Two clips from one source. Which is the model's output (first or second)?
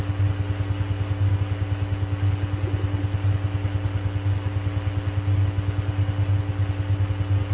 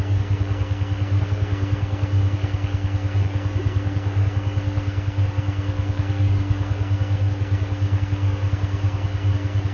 second